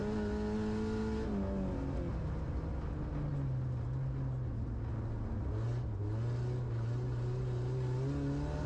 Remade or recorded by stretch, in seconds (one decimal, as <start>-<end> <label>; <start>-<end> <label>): 0.0-8.7 recorded

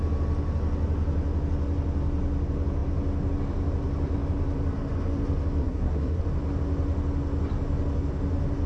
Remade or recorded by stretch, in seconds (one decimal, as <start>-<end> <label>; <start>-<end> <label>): 0.0-5.6 recorded; 5.6-6.2 remade; 6.2-8.7 recorded

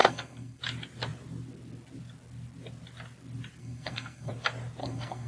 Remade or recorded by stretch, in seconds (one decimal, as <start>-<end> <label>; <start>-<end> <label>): 0.0-0.6 remade; 0.6-3.6 recorded; 3.6-4.3 remade; 4.3-4.8 recorded; 4.8-5.3 remade

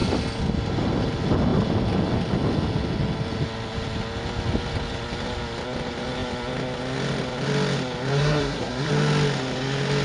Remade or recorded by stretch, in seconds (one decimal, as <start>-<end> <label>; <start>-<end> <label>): 0.0-8.1 recorded; 8.1-8.9 remade; 8.9-10.0 recorded

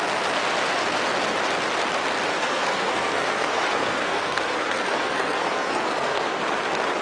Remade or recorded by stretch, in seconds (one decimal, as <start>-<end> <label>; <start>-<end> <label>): 0.0-2.3 recorded; 2.3-6.4 remade; 6.4-7.0 recorded

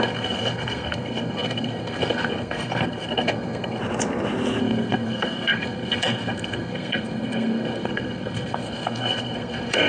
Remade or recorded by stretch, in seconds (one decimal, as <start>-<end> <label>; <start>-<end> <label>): 0.0-3.8 remade; 3.8-4.6 recorded; 4.6-9.9 remade

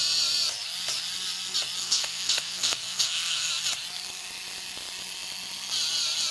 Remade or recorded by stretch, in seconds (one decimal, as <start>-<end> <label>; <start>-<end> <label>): 0.0-1.8 recorded; 1.8-3.5 remade; 3.5-6.3 recorded